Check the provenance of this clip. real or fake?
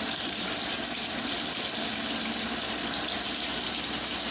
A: real